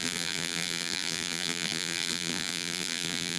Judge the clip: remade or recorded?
remade